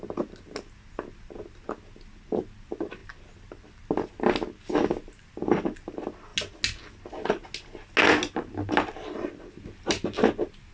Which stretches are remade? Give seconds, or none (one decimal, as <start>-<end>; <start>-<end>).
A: none